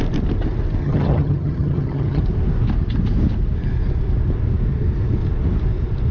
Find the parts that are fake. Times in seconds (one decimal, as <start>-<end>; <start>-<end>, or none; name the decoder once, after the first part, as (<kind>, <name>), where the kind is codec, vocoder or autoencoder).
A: 0.8-2.2 (vocoder, HiFi-GAN)